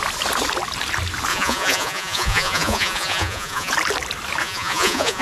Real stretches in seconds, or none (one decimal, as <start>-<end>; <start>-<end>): 0.0-1.3; 3.7-4.4